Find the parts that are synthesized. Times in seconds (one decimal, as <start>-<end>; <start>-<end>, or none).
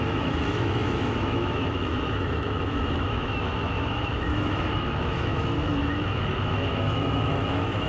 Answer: 0.0-7.9